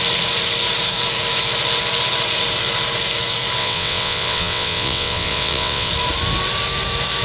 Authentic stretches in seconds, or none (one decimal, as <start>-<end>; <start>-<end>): 0.0-3.6; 5.9-7.2